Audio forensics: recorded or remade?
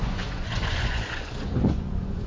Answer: remade